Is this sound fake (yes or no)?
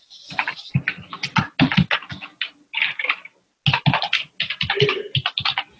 no